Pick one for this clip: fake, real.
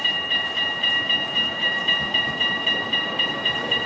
fake